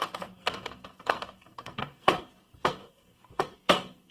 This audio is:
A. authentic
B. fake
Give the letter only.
B